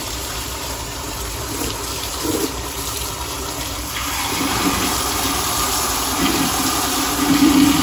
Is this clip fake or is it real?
fake